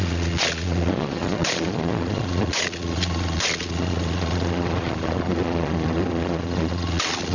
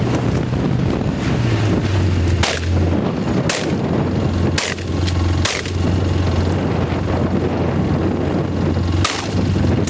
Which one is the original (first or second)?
second